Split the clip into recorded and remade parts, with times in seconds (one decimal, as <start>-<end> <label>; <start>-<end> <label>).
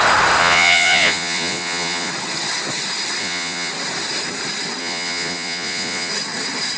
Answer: 0.0-0.4 recorded; 0.4-2.1 remade; 2.1-3.2 recorded; 3.2-3.7 remade; 3.7-4.8 recorded; 4.8-6.1 remade; 6.1-6.8 recorded